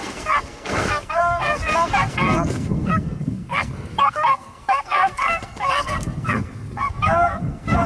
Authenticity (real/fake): fake